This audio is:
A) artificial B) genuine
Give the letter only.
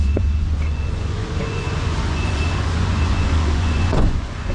A